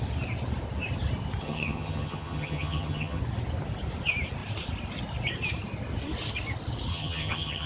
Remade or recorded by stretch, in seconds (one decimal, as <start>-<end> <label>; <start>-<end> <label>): 0.0-1.4 recorded; 1.4-3.2 remade; 3.2-6.9 recorded; 6.9-7.7 remade